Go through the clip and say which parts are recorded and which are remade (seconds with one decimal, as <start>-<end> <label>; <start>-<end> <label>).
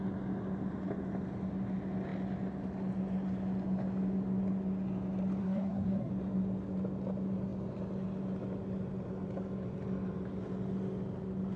0.0-5.4 recorded; 5.4-6.1 remade; 6.1-11.6 recorded